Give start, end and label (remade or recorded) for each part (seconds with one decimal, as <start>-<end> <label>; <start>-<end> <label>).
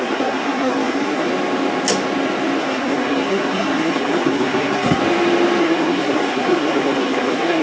0.0-1.3 remade; 1.3-2.6 recorded; 2.6-5.0 remade; 5.0-5.6 recorded; 5.6-7.6 remade